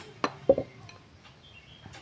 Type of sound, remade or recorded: recorded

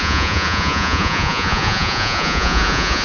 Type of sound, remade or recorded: remade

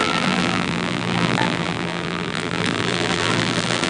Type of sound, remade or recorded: remade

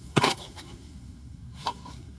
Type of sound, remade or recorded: remade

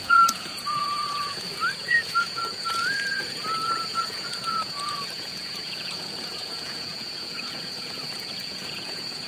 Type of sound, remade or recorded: remade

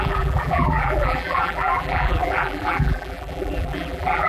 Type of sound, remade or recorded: remade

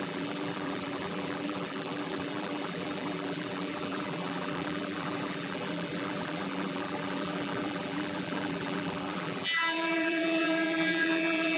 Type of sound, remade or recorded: remade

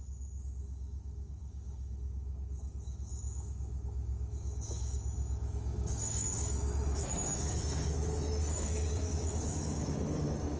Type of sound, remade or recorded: remade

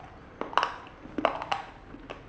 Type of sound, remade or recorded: recorded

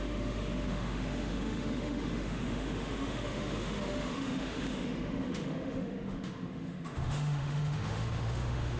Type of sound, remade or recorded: remade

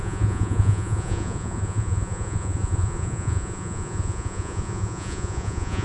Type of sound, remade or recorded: remade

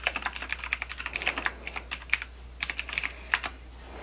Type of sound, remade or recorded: recorded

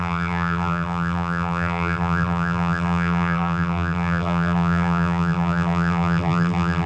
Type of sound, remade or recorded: remade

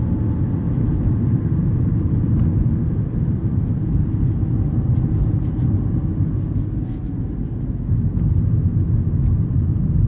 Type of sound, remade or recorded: recorded